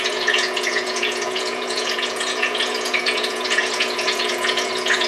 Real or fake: fake